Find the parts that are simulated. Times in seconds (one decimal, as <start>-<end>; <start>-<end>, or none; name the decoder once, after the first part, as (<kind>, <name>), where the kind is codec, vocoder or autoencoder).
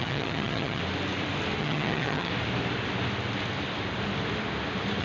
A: 0.0-0.8 (vocoder, HiFi-GAN); 1.6-2.3